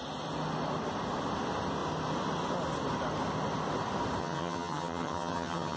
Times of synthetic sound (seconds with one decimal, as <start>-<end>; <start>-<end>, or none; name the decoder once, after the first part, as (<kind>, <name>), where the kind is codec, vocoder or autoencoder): 4.2-5.8 (vocoder, HiFi-GAN)